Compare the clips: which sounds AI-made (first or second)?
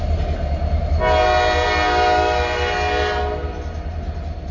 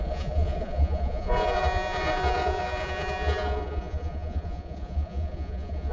second